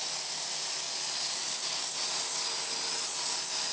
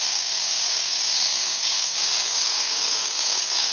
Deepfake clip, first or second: second